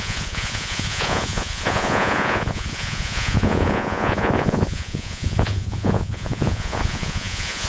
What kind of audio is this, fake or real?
fake